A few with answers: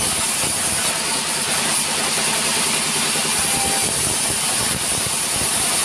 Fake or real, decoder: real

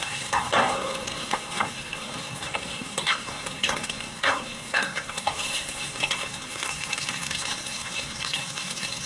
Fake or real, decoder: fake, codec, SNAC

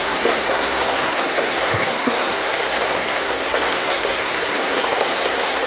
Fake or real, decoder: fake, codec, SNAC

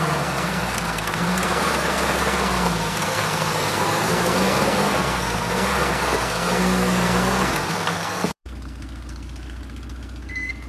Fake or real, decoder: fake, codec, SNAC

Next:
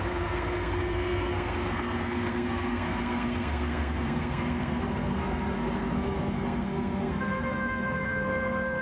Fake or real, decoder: fake, codec, SNAC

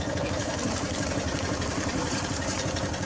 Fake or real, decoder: real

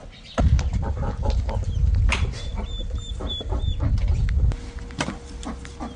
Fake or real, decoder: real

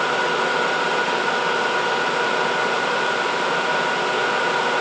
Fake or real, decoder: real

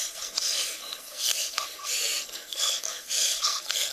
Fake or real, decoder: fake, codec, SNAC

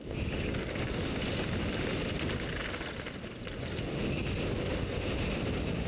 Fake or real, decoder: real